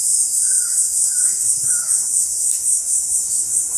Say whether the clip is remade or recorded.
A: remade